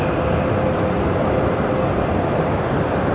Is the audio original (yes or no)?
yes